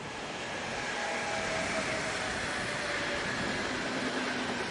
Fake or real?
real